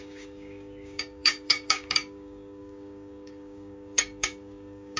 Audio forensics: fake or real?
fake